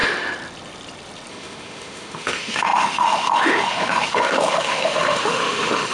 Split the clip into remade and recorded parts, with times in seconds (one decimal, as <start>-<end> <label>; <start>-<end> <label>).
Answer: 0.0-1.3 recorded; 1.3-5.9 remade